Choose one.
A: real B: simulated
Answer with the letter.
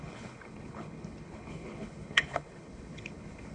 B